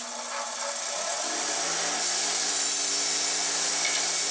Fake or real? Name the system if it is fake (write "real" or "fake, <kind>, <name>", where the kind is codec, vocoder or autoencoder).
real